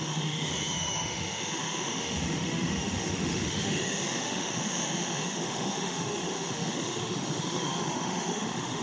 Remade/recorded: remade